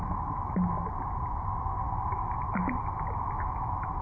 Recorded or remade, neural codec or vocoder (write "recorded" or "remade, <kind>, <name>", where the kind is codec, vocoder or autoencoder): recorded